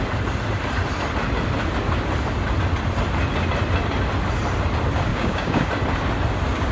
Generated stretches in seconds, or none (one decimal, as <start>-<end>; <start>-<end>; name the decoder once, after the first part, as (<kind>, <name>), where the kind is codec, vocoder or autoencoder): 5.1-5.7 (codec, DAC)